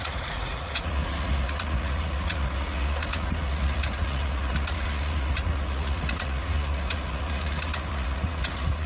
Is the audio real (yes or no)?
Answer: no